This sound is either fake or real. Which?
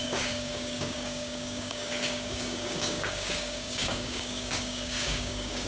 fake